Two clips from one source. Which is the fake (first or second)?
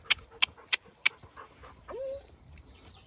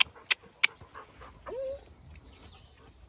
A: first